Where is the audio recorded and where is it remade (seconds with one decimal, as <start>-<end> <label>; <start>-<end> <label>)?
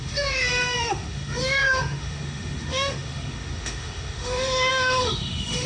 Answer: 0.0-5.7 remade